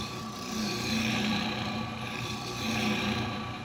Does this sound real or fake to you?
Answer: fake